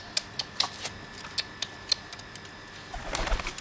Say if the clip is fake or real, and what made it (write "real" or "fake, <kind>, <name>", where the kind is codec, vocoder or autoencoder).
real